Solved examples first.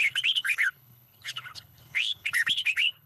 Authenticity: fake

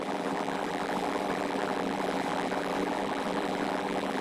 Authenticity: fake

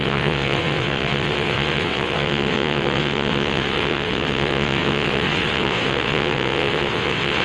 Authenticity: fake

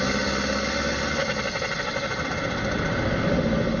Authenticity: real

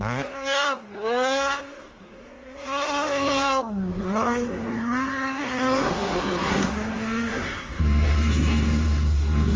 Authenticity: fake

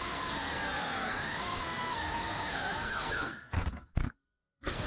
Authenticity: fake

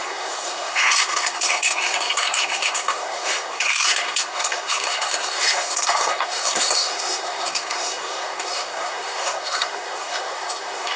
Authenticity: fake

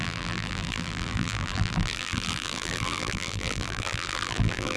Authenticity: fake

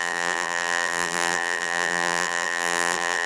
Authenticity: fake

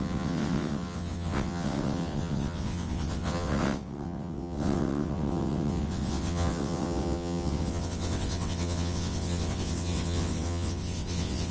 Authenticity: fake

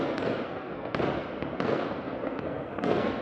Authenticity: fake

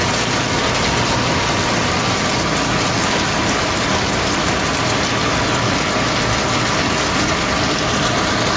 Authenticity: real